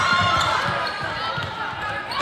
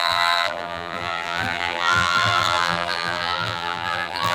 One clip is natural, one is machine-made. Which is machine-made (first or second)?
second